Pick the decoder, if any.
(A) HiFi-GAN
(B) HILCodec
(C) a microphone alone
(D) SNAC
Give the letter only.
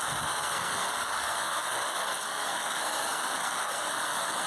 D